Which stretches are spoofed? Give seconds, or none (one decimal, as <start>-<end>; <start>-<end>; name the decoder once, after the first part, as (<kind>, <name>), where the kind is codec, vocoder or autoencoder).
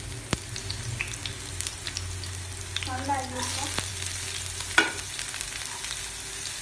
none